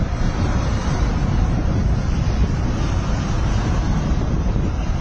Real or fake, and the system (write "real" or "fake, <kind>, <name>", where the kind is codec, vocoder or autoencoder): fake, vocoder, BigVGAN v2